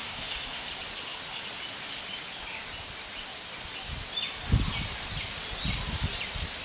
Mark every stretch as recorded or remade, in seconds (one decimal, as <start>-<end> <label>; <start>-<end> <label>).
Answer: 0.0-0.7 remade; 0.7-6.6 recorded

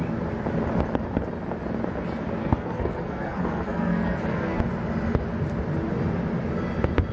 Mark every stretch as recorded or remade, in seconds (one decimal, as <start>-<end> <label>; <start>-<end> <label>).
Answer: 0.0-2.4 recorded; 2.4-4.6 remade; 4.6-7.1 recorded